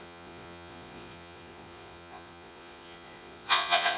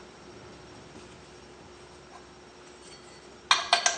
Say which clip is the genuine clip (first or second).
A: second